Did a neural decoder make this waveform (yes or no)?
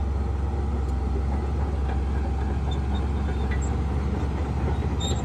no